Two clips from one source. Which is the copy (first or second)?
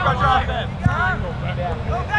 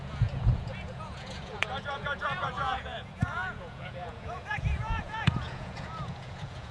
second